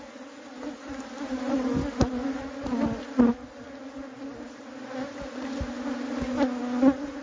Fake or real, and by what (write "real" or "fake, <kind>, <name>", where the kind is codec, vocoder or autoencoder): real